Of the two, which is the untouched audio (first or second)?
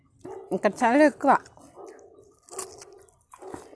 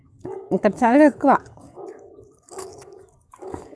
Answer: first